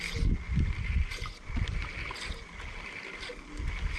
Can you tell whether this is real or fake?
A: real